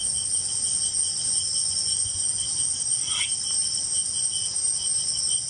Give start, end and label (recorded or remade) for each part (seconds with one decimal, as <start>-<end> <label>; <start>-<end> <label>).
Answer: 0.0-3.3 remade; 3.3-5.5 recorded